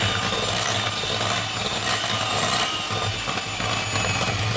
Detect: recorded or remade recorded